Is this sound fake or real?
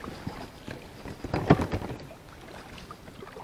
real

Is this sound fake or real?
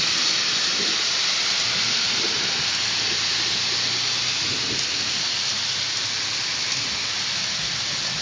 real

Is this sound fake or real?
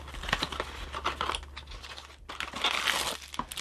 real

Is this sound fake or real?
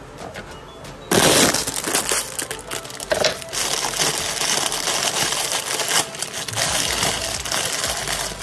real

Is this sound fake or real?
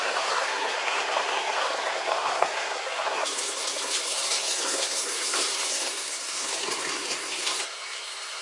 fake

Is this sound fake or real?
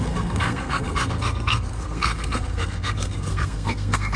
fake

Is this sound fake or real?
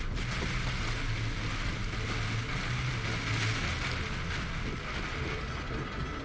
real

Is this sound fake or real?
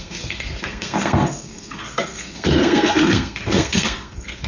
fake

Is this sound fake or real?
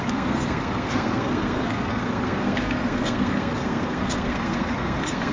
fake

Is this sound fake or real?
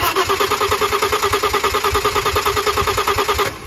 real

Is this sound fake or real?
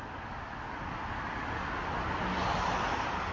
real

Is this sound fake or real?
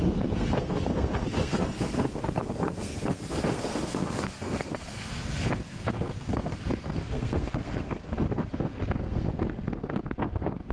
fake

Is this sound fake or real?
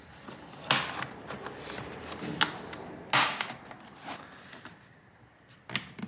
real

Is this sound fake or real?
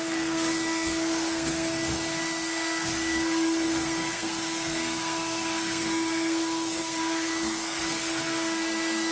fake